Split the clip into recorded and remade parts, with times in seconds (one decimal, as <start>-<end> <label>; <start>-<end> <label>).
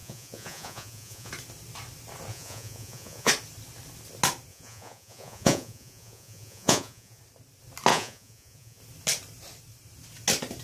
0.0-1.3 remade; 1.3-2.3 recorded; 2.3-3.3 remade; 3.3-4.5 recorded; 4.5-7.2 remade; 7.2-7.9 recorded; 7.9-8.8 remade; 8.8-10.6 recorded